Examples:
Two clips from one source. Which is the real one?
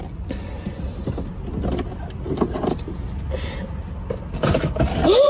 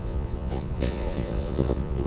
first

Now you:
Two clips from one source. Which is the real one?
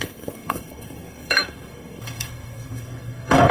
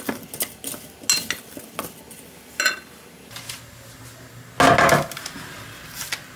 second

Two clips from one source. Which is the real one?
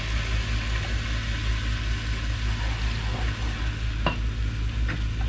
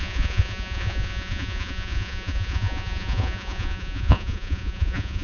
first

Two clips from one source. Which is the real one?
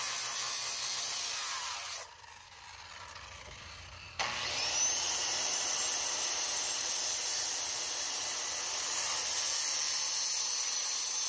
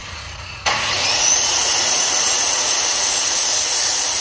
first